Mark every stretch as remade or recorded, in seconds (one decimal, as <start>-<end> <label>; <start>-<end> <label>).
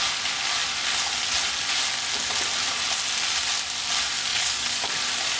0.0-4.3 recorded; 4.3-4.9 remade; 4.9-5.4 recorded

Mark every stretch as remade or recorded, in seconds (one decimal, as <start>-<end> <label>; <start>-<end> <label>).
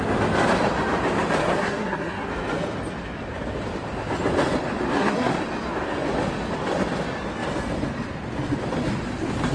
0.0-1.4 recorded; 1.4-2.3 remade; 2.3-4.9 recorded; 4.9-5.4 remade; 5.4-9.5 recorded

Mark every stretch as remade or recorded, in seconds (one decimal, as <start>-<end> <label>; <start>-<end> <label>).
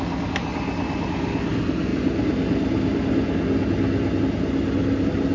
0.0-5.3 recorded